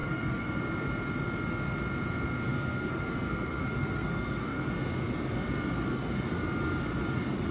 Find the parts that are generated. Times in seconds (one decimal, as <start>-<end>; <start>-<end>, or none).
0.0-0.6; 2.5-4.7